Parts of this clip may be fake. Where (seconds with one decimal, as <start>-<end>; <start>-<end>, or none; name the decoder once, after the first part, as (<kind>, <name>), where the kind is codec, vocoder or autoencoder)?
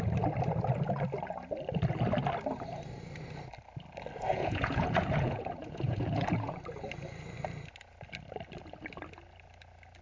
4.3-6.6 (vocoder, Vocos)